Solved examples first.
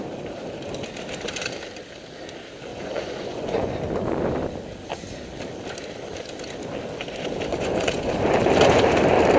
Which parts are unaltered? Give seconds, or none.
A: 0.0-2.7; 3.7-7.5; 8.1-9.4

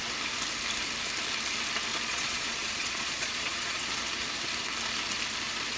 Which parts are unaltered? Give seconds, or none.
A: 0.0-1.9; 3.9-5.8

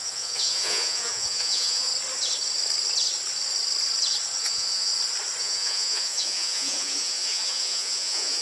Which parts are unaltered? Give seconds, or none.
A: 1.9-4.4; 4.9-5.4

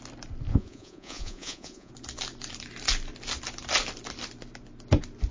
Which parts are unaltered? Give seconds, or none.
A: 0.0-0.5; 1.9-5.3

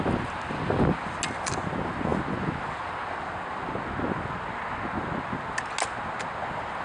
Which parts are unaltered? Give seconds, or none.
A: 0.0-6.8